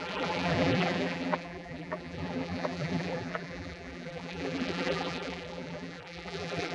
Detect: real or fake fake